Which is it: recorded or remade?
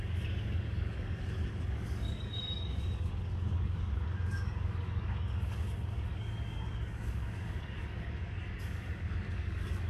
remade